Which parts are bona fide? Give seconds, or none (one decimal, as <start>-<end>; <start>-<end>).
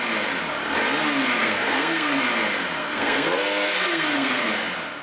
0.0-1.4; 2.2-2.8; 4.5-5.0